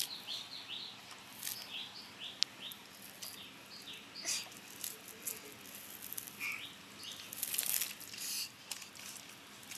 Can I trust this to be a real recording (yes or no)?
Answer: yes